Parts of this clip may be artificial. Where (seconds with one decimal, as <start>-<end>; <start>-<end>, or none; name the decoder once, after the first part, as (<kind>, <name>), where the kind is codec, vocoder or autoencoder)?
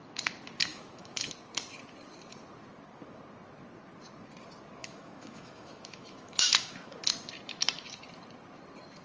0.7-1.3 (autoencoder, DAC-VAE); 4.8-7.0